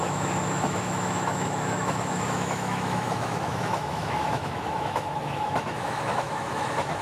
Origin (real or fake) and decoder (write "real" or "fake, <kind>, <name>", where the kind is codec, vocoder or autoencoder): fake, autoencoder, DAC-VAE